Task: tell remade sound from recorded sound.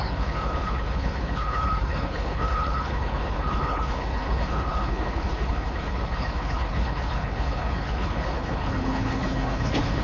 remade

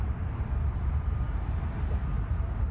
recorded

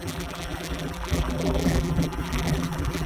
remade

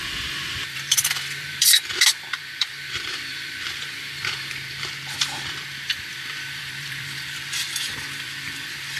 remade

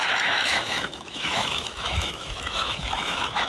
remade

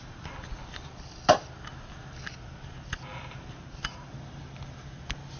recorded